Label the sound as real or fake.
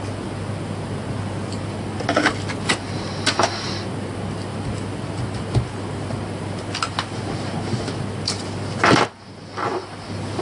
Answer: real